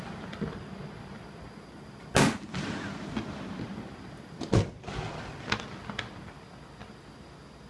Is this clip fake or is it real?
real